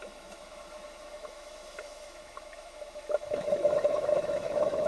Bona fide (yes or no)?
no